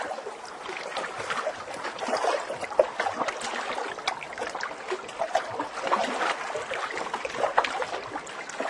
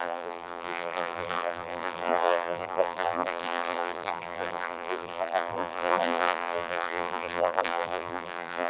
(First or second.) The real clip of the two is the first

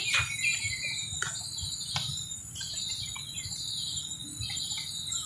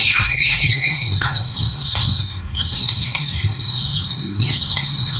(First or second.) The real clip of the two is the first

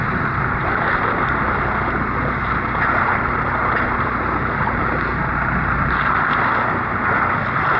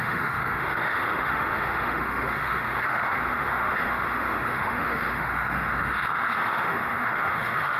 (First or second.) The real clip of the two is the first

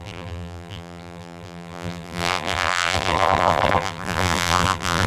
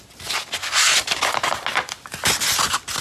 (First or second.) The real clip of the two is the second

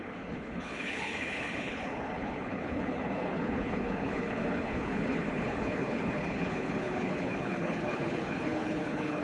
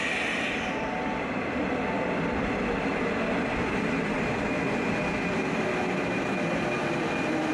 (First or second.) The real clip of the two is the second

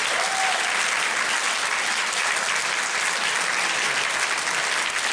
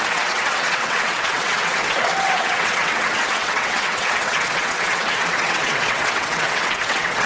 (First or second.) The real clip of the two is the first